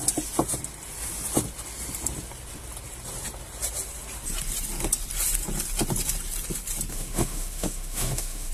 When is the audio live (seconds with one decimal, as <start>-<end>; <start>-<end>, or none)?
0.0-6.9